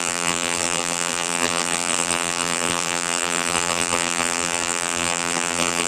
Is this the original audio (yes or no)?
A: no